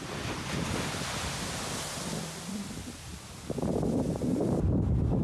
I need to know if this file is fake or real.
real